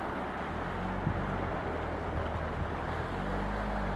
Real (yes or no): yes